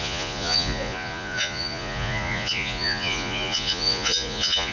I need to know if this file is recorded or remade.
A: remade